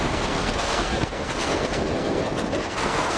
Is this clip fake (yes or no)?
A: yes